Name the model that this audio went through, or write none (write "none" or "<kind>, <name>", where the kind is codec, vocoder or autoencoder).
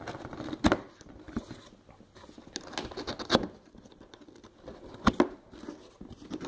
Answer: none